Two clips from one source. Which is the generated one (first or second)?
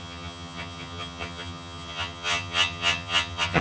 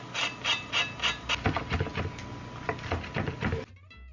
first